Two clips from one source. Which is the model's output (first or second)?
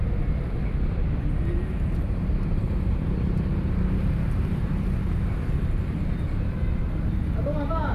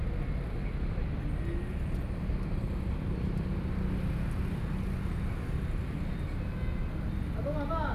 first